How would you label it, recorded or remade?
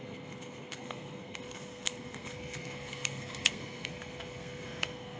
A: remade